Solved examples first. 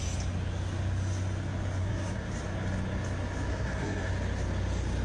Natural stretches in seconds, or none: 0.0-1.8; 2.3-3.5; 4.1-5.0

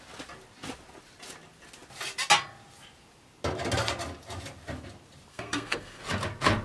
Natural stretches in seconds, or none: 0.0-5.3; 6.0-6.6

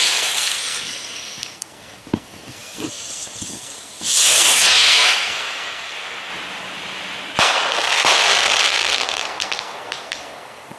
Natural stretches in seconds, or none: 6.3-7.4

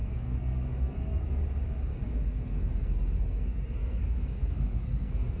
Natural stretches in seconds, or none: 1.4-1.9